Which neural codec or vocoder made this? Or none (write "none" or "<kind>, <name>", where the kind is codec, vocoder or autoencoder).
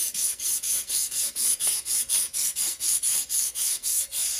codec, SNAC